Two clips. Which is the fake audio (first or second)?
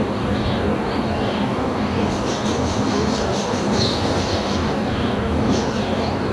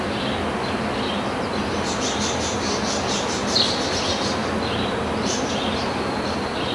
first